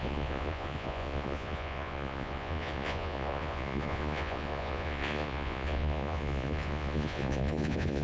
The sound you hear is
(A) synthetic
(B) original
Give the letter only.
A